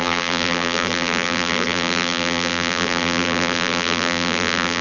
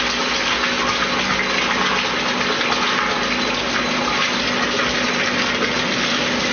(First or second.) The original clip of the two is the second